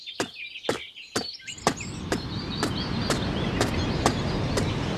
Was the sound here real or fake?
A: real